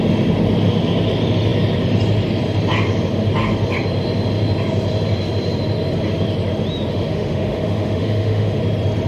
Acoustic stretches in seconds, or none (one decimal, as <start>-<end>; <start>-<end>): 0.0-6.9; 8.6-9.1